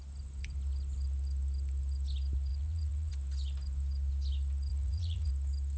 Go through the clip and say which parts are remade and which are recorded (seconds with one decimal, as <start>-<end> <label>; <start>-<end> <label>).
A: 0.0-2.5 recorded; 2.5-3.1 remade; 3.1-4.7 recorded; 4.7-5.3 remade; 5.3-5.8 recorded